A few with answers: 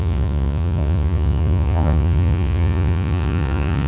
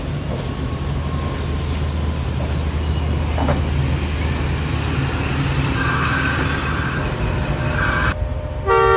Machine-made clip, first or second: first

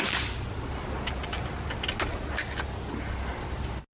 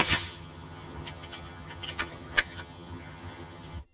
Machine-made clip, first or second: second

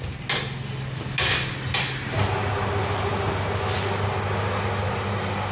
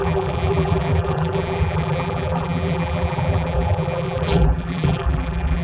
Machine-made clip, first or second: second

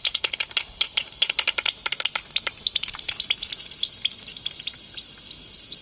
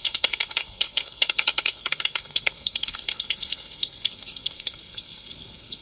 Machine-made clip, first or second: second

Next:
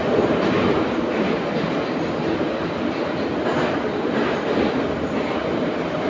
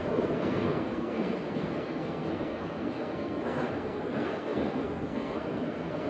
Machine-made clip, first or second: second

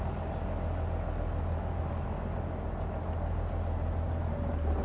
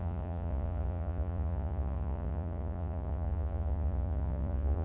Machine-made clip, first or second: second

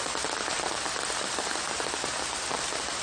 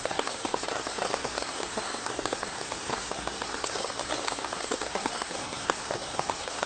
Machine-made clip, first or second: second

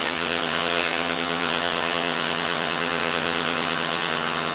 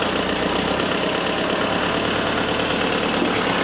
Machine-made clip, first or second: first